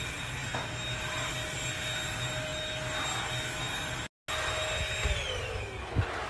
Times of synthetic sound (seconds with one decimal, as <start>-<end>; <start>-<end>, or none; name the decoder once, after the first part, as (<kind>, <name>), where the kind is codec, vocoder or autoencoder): none